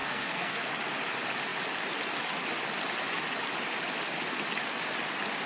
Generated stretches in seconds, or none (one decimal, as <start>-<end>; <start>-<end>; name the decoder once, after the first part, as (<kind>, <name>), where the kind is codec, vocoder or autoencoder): 0.0-0.7 (codec, SNAC)

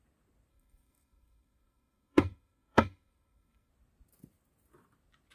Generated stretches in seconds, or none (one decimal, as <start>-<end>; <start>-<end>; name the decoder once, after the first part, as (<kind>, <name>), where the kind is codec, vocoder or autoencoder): 0.5-3.7 (codec, SNAC)

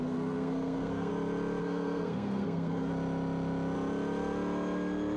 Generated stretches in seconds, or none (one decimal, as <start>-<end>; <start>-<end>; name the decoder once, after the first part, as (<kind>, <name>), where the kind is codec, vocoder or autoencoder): 0.0-1.1 (codec, SNAC); 1.6-2.9

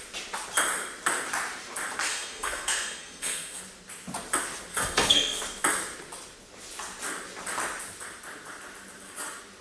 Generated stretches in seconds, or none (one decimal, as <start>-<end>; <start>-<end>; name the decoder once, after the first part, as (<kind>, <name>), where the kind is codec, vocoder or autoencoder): 2.1-3.6 (codec, SNAC); 4.7-5.4

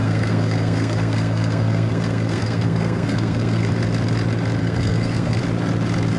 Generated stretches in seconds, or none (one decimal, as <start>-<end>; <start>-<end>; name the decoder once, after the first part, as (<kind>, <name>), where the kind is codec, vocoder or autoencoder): 0.0-3.7 (codec, SNAC); 4.6-5.4